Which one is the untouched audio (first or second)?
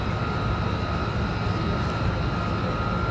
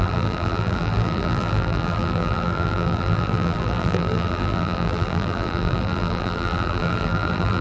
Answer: first